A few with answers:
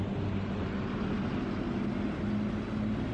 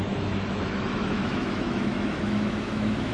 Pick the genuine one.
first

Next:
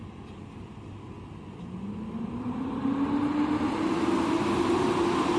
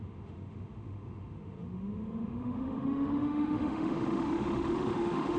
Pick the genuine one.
first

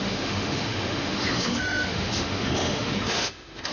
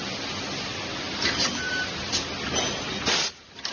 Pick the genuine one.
second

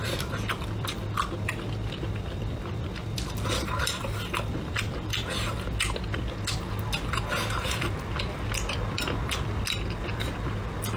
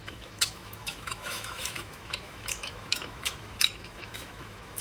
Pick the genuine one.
first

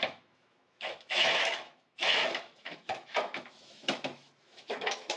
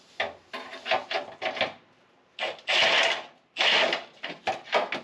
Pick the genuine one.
second